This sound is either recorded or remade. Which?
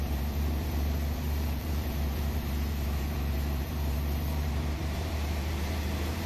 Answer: remade